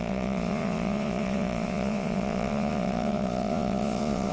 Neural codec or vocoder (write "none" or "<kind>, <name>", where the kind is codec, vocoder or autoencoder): vocoder, Vocos